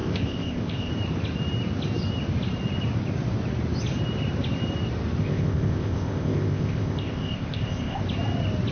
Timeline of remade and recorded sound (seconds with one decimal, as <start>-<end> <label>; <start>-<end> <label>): 0.0-0.9 remade; 0.9-5.2 recorded; 5.2-8.0 remade; 8.0-8.7 recorded